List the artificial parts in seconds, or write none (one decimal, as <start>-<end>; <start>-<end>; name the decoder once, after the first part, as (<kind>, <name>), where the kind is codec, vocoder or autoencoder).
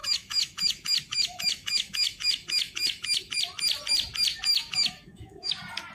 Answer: 0.0-3.4 (autoencoder, DAC-VAE); 4.5-5.5